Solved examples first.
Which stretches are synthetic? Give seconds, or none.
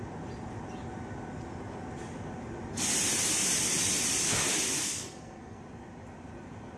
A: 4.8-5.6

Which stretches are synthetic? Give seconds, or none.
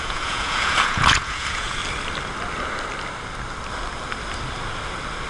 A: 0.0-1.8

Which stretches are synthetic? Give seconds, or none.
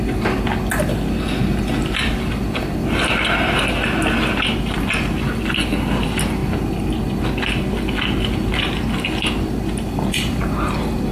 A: none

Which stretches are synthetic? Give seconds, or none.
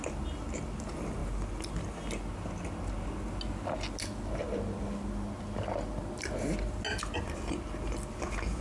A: none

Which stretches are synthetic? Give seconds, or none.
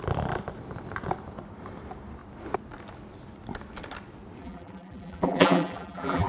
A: 4.4-6.3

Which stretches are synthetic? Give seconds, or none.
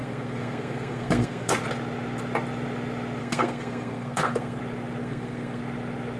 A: 0.0-1.5; 3.2-4.6; 5.0-5.6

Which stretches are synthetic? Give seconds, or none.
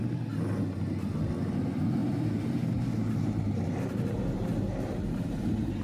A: 2.0-5.8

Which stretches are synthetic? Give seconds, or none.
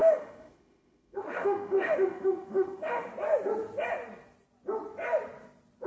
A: 0.0-3.1